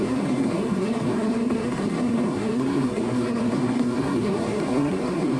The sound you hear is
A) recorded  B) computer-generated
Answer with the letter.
B